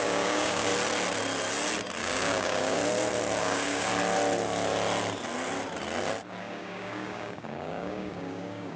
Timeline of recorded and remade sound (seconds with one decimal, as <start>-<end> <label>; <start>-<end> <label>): 0.0-0.7 remade; 0.7-2.0 recorded; 2.0-2.8 remade; 2.8-3.4 recorded; 3.4-3.9 remade; 3.9-6.4 recorded; 6.4-8.8 remade